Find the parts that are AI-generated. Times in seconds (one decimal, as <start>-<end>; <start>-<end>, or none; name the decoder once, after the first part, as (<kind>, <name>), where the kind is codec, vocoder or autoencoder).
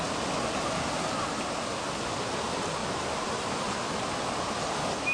none